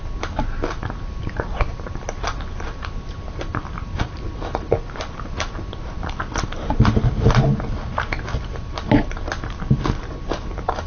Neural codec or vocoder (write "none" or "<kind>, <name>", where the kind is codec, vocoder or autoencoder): none